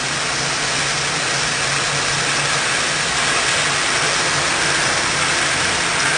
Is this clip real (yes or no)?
yes